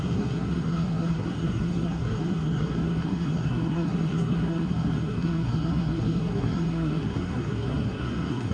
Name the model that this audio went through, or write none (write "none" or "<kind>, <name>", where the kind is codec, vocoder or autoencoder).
codec, SNAC